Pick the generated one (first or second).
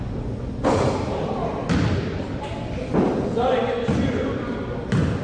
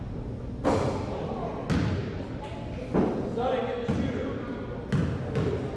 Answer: first